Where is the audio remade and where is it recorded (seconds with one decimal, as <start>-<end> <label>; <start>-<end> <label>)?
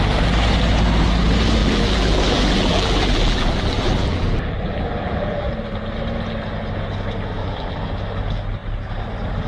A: 0.0-1.6 recorded; 1.6-5.5 remade; 5.5-7.4 recorded; 7.4-7.9 remade; 7.9-9.5 recorded